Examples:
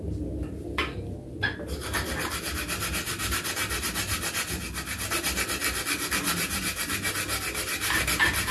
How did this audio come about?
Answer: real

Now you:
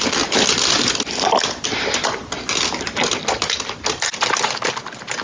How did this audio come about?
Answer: real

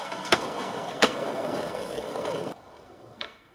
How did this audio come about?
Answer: fake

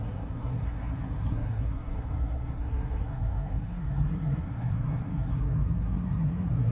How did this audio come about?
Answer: fake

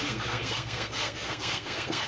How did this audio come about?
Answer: fake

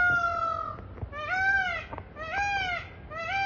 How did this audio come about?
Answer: real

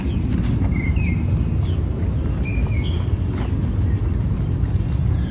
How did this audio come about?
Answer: real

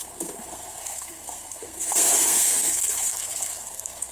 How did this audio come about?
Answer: fake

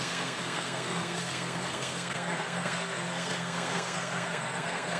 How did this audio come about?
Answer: fake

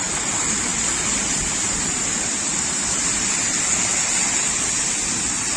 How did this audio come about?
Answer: real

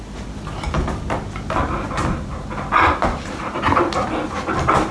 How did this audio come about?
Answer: real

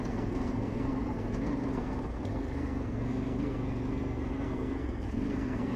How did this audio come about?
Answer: fake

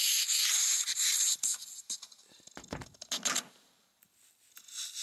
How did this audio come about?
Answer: real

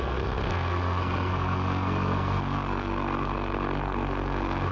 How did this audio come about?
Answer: fake